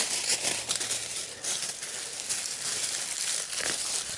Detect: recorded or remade recorded